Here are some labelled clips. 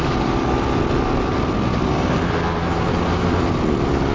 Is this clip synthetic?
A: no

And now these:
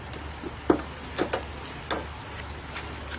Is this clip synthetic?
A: no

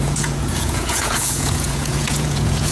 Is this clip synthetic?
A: yes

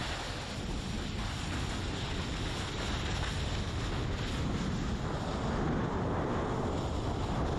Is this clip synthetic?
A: no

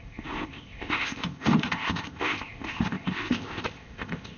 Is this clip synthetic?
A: yes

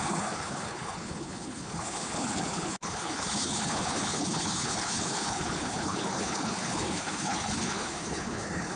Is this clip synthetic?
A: yes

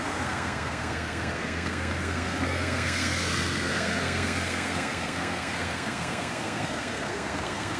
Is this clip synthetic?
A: yes